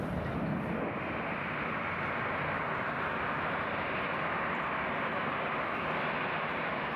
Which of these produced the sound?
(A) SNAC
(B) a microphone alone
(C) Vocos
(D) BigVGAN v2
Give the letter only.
B